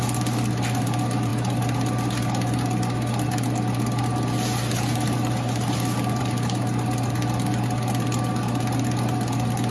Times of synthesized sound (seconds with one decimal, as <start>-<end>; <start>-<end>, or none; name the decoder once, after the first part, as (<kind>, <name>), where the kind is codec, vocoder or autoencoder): none